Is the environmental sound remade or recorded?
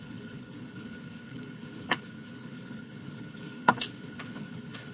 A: remade